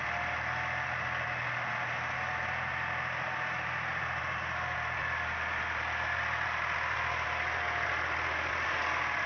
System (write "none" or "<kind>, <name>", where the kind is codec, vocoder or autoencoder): none